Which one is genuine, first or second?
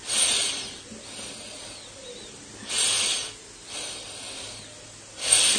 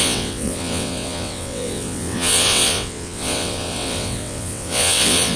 first